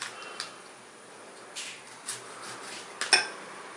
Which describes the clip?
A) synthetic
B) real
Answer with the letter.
B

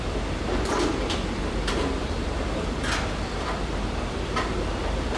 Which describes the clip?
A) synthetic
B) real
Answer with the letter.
A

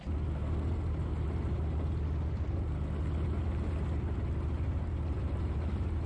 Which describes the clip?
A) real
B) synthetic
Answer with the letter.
A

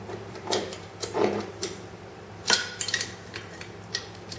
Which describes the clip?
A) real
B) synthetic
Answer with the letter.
B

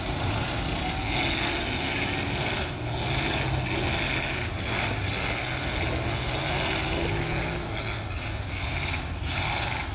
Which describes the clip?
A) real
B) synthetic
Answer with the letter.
A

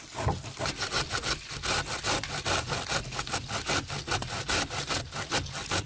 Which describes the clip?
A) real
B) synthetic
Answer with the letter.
A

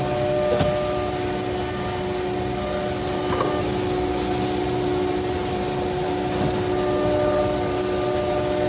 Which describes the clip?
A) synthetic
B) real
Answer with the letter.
B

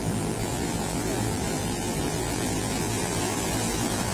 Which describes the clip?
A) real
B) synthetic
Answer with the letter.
B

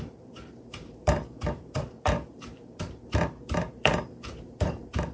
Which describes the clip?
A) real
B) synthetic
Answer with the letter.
B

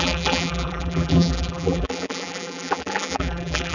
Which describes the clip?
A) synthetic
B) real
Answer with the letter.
A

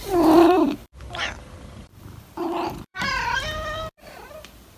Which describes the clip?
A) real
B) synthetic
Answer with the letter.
B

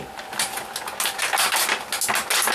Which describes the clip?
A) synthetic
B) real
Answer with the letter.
B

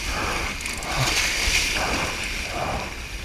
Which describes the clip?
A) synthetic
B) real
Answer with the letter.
B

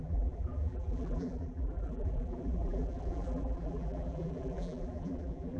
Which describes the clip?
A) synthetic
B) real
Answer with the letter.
A